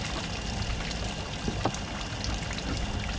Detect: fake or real real